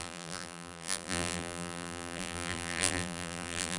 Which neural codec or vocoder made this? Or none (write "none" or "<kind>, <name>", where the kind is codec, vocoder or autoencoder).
vocoder, BigVGAN v2